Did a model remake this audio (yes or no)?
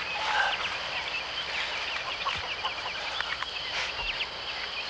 no